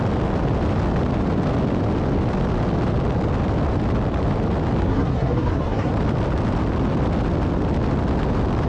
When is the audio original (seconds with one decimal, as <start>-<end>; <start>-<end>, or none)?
0.0-4.8; 5.9-8.7